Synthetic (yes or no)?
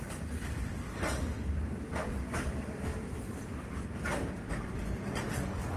no